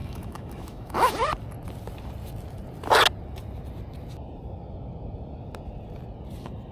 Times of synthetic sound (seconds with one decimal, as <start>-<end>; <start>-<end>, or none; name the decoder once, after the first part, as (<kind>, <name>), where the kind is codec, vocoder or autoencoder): 0.0-1.1 (autoencoder, DAC-VAE)

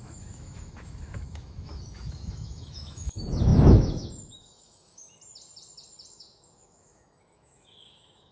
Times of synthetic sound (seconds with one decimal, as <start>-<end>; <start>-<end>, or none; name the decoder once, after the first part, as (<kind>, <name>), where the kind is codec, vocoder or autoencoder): 0.0-5.0 (autoencoder, DAC-VAE); 6.1-8.3

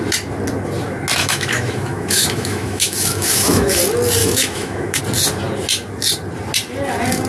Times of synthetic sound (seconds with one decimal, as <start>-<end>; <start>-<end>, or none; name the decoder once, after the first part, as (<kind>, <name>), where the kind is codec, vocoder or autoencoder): 1.2-3.8 (autoencoder, DAC-VAE); 4.2-5.0

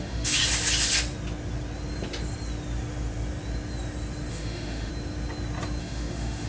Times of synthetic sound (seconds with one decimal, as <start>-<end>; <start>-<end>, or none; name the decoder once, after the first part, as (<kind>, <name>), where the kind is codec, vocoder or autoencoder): 0.0-0.4 (autoencoder, DAC-VAE); 4.3-4.9; 5.8-6.5